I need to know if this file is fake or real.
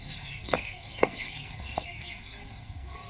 fake